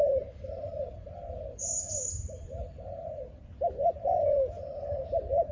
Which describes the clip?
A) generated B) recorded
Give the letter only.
A